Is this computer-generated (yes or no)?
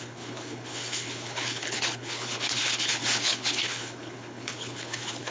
yes